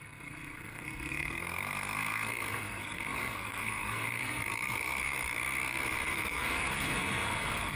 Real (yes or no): no